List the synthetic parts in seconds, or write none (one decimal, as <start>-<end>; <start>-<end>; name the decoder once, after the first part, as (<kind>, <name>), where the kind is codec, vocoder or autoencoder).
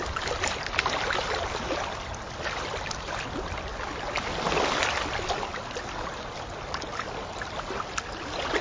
none